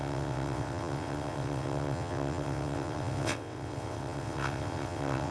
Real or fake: fake